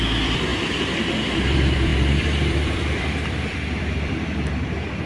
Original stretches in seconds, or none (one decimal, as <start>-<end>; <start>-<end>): none